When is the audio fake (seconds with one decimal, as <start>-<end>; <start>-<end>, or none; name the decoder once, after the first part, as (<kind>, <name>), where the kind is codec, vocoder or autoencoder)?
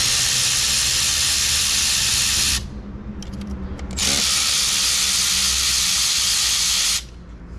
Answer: none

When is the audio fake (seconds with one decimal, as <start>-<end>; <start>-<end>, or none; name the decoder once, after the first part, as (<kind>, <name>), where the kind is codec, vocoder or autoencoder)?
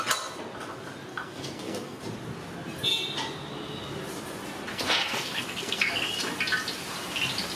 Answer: 1.1-2.0 (codec, SNAC); 4.7-6.1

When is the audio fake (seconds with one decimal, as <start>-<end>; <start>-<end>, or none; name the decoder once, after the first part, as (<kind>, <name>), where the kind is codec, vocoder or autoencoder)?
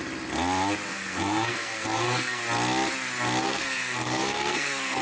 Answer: 0.9-2.4 (codec, SNAC); 3.4-5.0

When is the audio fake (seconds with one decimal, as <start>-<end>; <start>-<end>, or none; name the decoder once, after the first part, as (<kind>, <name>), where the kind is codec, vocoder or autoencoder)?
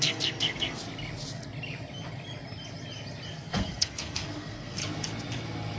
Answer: 0.0-0.8 (codec, SNAC); 3.3-4.8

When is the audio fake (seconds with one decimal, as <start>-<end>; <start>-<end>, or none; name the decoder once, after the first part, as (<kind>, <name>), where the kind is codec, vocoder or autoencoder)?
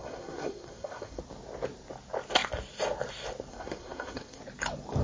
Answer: 0.0-1.2 (codec, SNAC); 3.5-4.4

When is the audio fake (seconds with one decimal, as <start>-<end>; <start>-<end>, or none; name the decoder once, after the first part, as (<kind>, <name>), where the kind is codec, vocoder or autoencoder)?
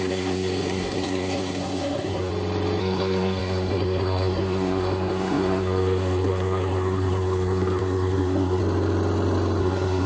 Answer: 0.0-2.3 (codec, SNAC); 2.8-8.6; 9.6-10.1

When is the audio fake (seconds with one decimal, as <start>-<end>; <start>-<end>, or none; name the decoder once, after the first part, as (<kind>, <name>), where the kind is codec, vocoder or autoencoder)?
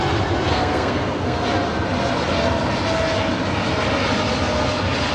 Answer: 0.5-1.4 (codec, SNAC)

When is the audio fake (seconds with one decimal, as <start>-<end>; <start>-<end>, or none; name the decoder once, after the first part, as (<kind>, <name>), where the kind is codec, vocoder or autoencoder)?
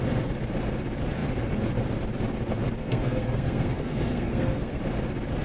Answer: 2.8-4.8 (codec, SNAC)